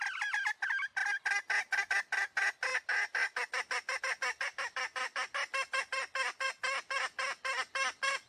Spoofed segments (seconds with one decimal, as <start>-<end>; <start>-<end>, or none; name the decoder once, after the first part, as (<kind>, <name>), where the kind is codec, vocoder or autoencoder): none